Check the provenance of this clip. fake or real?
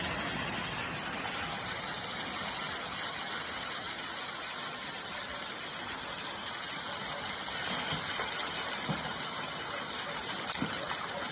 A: real